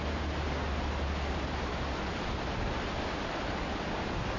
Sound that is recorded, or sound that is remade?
recorded